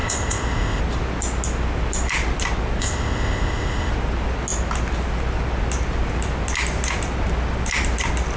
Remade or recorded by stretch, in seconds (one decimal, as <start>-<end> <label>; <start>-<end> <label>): 0.0-0.8 remade; 0.8-2.8 recorded; 2.8-3.9 remade; 3.9-8.4 recorded